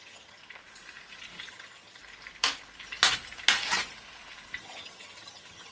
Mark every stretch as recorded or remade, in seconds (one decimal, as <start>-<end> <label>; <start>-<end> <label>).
0.0-0.4 remade; 0.4-1.5 recorded; 1.5-2.0 remade; 2.0-4.6 recorded; 4.6-5.7 remade